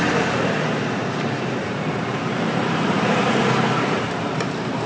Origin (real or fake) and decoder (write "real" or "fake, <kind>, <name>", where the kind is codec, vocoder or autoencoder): fake, vocoder, BigVGAN v2